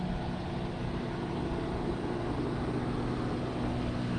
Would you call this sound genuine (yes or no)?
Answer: yes